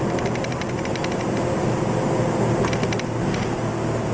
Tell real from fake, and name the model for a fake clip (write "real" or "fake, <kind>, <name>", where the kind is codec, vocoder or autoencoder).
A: real